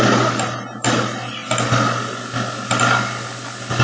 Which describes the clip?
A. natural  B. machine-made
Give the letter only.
A